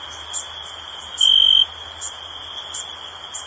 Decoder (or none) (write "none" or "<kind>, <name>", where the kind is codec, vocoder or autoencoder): none